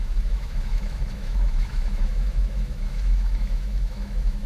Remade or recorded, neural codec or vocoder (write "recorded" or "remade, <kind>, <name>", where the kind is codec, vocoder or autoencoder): remade, autoencoder, DAC-VAE